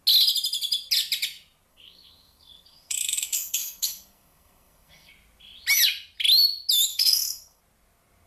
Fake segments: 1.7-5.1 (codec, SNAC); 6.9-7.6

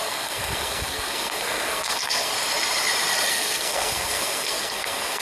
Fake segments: 0.0-2.3 (codec, SNAC); 3.3-5.2

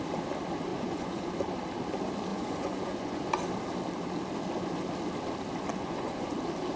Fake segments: 0.7-1.3 (vocoder, Vocos); 2.3-3.3; 5.7-6.3

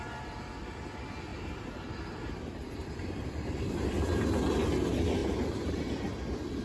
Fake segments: 1.3-3.7 (vocoder, BigVGAN v2); 5.2-5.9

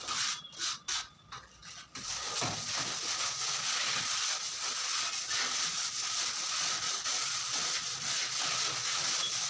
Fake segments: none

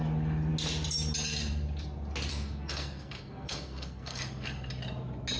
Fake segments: 2.3-4.7 (codec, SNAC)